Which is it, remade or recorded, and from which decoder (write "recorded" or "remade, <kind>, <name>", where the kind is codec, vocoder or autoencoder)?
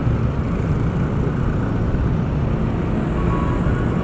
recorded